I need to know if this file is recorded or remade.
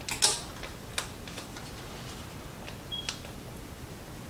recorded